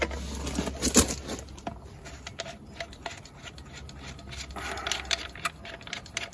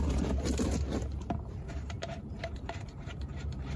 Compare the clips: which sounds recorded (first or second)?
first